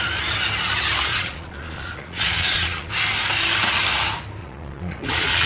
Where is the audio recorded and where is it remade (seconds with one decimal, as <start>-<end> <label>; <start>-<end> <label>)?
0.0-1.1 recorded; 1.1-2.9 remade; 2.9-4.4 recorded; 4.4-5.5 remade